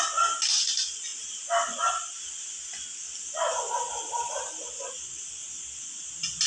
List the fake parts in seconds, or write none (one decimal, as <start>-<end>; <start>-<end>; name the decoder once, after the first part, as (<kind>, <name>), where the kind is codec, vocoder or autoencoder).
none